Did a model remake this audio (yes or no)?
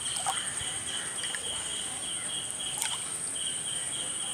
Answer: no